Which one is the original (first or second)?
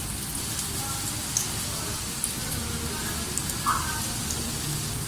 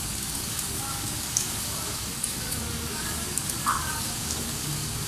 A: first